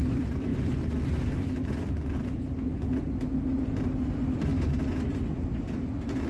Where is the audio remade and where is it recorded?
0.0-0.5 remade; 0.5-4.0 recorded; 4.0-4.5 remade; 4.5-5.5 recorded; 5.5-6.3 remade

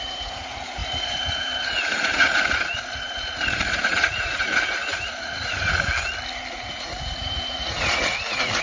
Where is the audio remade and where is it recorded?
0.0-5.9 remade; 5.9-6.5 recorded; 6.5-8.6 remade

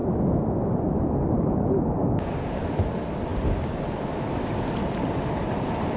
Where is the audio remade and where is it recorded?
0.0-2.0 recorded; 2.0-2.6 remade; 2.6-6.0 recorded